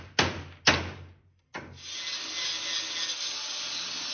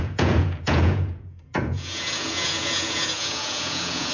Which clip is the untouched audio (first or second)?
first